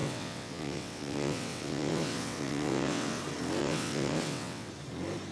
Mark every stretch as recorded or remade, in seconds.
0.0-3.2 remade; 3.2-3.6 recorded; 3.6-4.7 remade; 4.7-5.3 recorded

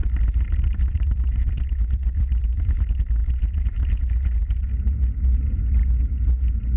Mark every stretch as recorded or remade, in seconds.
0.0-2.8 remade; 2.8-6.8 recorded